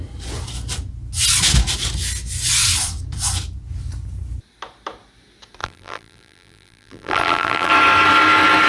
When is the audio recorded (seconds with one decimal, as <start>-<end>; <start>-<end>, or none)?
0.0-5.6; 7.7-8.7